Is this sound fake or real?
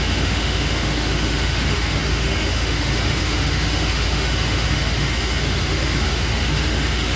fake